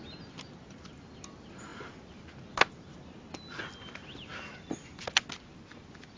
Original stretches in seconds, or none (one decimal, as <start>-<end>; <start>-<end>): 0.0-6.2